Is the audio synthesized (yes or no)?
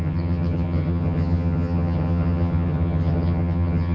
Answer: yes